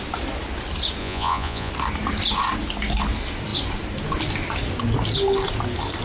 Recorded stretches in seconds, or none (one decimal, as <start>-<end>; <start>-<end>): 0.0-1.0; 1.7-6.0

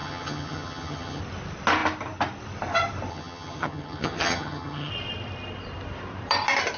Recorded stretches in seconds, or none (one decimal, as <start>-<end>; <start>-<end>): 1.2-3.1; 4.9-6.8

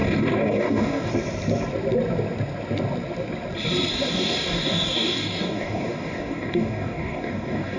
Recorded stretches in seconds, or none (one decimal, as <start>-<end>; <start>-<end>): 1.1-3.9